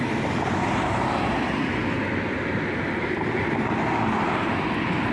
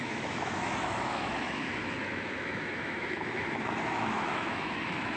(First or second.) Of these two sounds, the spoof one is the second